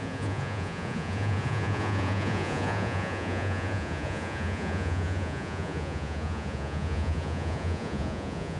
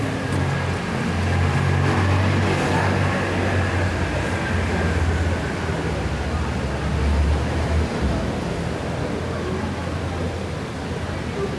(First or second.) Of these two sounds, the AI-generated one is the first